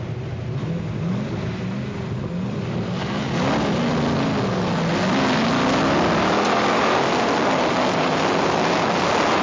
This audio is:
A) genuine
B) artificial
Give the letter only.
A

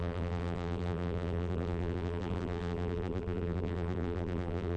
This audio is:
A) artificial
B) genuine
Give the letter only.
A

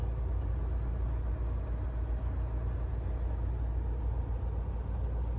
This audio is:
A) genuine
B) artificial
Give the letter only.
A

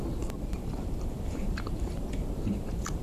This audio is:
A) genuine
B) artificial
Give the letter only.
B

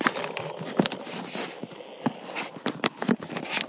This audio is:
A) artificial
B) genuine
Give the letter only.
B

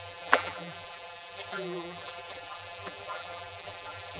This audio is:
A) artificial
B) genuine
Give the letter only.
A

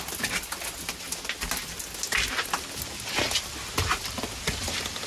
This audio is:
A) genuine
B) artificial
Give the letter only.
A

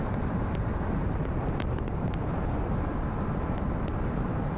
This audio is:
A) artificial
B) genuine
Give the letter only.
A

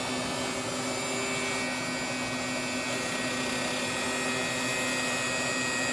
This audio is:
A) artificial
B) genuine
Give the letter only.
B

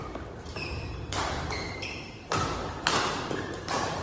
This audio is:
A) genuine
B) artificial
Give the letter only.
B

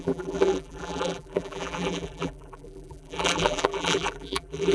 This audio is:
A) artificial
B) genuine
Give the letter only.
A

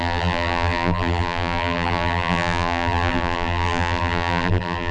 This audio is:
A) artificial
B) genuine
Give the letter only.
A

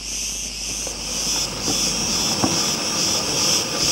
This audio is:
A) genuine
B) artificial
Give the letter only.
A